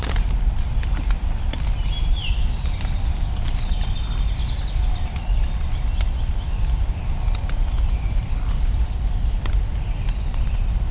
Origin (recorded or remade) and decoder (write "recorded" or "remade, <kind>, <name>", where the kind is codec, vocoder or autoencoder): remade, vocoder, BigVGAN v2